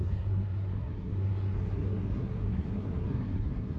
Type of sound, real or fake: fake